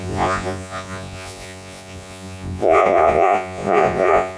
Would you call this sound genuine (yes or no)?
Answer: no